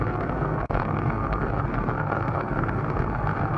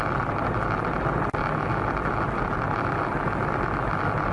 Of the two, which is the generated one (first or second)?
first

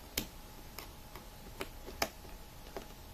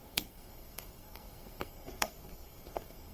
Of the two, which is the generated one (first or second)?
second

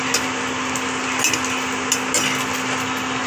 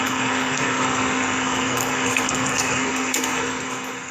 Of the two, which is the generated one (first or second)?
second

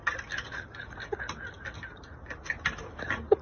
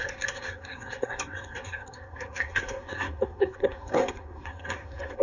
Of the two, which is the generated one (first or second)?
second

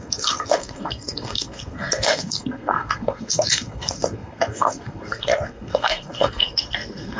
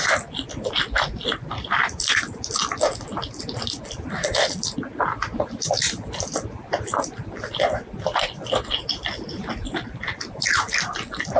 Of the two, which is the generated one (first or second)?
first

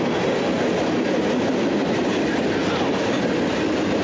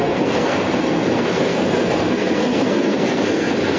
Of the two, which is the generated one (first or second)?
second